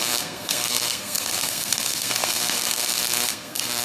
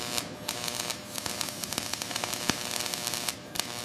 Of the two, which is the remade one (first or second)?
first